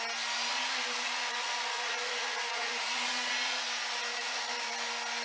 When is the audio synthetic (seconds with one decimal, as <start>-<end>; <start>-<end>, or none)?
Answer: 0.5-3.6; 4.1-4.7